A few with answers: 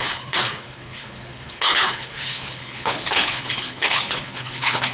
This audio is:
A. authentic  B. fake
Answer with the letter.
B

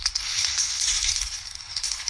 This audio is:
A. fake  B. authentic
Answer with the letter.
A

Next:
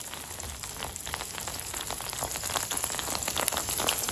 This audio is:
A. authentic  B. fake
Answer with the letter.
A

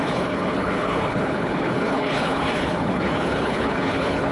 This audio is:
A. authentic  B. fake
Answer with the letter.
B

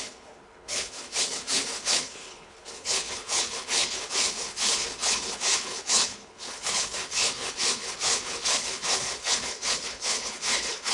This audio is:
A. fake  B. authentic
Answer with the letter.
A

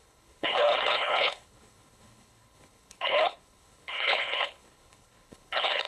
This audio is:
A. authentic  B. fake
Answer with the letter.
B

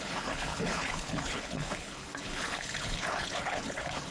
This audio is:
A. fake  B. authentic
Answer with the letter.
A